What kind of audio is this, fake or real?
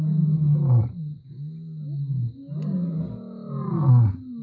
real